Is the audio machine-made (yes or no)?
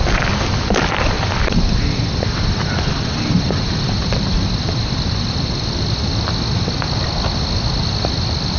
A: no